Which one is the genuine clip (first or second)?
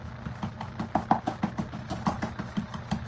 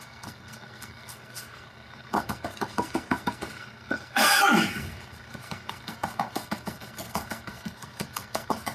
first